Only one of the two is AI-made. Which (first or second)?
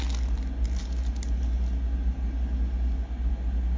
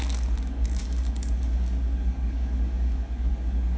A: second